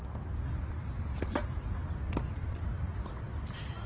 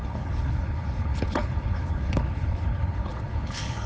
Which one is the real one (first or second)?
first